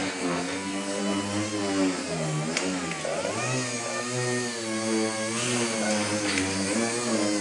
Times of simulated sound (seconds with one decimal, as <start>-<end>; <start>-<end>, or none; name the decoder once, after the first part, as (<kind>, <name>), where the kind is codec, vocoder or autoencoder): 0.0-1.0 (codec, SNAC)